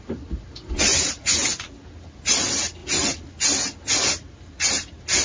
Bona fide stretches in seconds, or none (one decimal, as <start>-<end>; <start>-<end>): 0.0-5.2